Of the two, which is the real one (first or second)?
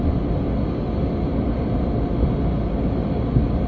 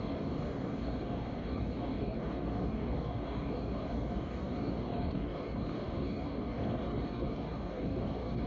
first